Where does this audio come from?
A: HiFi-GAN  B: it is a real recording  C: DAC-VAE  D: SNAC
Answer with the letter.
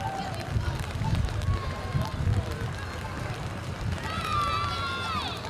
B